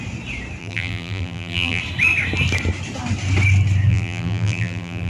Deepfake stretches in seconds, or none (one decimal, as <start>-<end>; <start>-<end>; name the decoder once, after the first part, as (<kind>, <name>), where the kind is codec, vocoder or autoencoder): 0.6-1.8 (vocoder, BigVGAN v2); 3.9-5.1